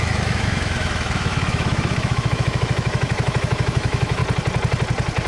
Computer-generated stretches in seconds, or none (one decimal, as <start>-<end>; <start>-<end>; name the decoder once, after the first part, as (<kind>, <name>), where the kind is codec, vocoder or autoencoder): 0.0-4.2 (autoencoder, DAC-VAE)